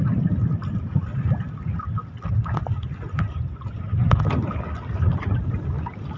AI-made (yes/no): no